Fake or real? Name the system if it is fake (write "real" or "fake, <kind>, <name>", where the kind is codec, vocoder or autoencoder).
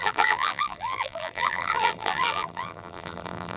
fake, vocoder, BigVGAN v2